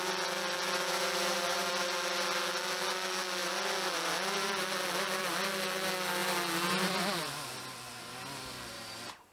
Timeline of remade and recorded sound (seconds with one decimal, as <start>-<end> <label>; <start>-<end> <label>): 0.0-9.3 recorded